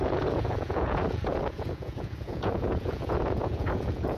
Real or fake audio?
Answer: fake